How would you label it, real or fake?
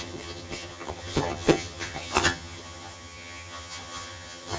fake